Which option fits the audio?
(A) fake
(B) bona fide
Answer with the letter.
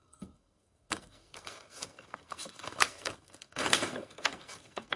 A